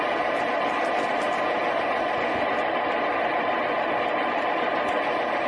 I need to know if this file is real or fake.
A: real